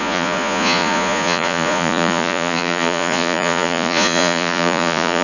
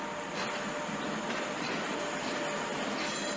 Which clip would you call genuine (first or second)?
second